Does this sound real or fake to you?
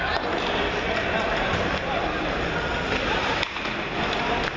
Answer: real